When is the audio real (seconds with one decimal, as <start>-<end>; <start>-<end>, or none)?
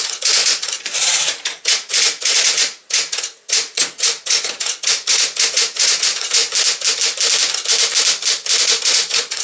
6.4-8.6